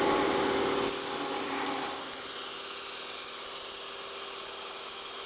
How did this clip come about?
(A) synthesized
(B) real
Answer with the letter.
B